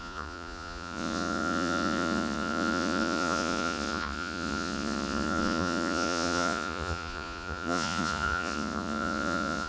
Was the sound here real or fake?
fake